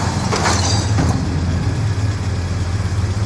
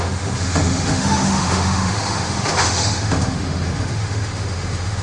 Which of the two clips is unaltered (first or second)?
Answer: first